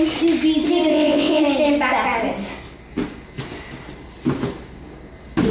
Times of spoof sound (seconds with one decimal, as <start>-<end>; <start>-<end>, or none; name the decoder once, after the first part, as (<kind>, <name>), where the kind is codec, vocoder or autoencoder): 0.9-1.4 (vocoder, WaveNeXt)

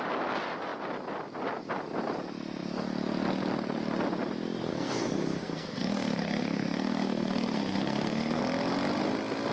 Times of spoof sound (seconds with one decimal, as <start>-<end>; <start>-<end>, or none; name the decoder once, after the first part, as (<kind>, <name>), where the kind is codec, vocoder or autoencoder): 4.7-8.4 (codec, SNAC)

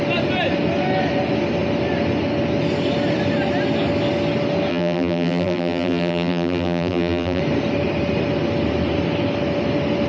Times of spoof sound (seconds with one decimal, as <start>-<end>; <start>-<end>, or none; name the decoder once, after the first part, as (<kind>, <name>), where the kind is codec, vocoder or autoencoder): 4.7-7.4 (vocoder, BigVGAN v2)

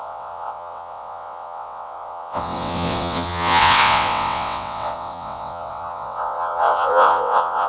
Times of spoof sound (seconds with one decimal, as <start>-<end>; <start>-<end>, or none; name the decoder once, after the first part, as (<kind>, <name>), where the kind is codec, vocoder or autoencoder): 0.0-7.7 (vocoder, WaveNeXt)

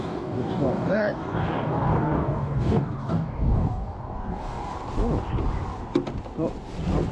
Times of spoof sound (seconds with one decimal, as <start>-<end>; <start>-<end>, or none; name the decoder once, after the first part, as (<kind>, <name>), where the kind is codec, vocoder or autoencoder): 0.0-4.7 (codec, DAC)